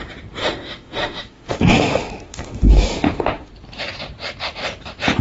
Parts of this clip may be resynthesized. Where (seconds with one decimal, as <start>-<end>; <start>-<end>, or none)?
0.4-3.5